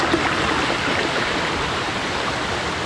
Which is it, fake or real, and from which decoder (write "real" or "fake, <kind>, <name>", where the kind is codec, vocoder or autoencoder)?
real